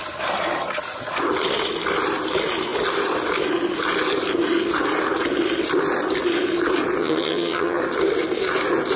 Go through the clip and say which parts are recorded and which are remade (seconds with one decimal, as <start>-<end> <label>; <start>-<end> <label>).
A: 0.0-7.0 recorded; 7.0-7.8 remade; 7.8-9.0 recorded